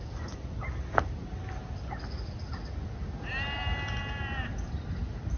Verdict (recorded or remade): recorded